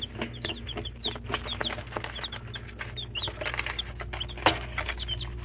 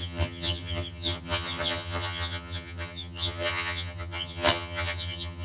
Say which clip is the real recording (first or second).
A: first